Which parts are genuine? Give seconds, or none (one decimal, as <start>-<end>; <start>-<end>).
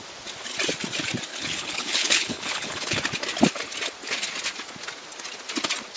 0.0-1.3; 3.0-6.0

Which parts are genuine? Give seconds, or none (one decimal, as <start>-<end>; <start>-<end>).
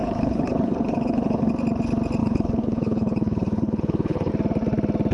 1.5-2.2; 4.3-5.1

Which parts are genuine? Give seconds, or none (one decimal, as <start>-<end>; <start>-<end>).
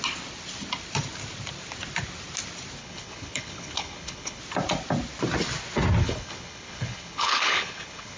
0.0-2.8; 4.4-6.0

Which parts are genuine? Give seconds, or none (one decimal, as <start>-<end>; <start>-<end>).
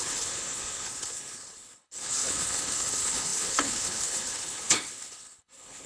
none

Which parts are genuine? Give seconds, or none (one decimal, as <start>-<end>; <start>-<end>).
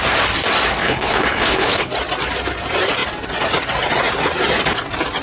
0.0-0.8; 1.9-5.2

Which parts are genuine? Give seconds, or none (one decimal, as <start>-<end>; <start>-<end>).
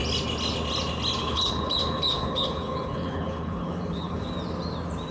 0.0-1.2; 4.3-5.1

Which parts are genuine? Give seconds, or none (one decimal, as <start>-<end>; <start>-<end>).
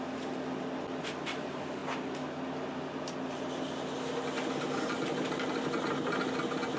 0.0-6.8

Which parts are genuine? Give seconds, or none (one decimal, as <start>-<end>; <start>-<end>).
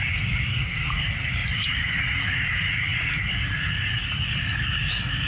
0.0-5.3